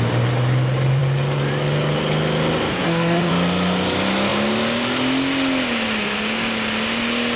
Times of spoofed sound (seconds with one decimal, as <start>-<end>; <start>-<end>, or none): 2.7-3.3